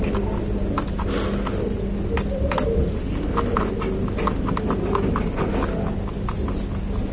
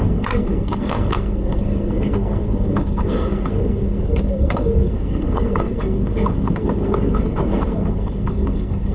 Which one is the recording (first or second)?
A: first